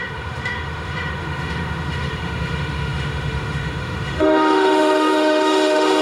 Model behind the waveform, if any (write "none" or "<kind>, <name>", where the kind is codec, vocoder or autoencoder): autoencoder, DAC-VAE